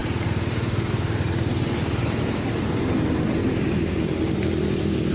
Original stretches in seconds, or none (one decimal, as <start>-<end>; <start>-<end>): none